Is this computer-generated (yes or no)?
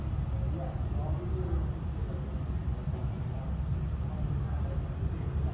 no